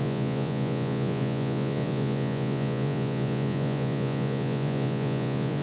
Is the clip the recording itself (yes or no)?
no